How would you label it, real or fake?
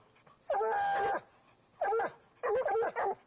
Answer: real